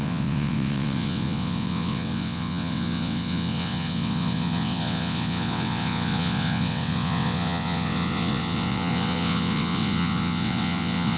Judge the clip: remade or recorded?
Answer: remade